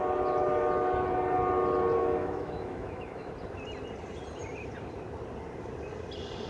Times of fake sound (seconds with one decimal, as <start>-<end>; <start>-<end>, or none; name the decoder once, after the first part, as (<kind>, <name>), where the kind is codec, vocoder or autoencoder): 2.0-3.3 (autoencoder, DAC-VAE)